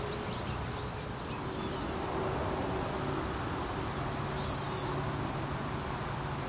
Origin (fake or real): real